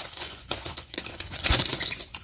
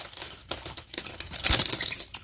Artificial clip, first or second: first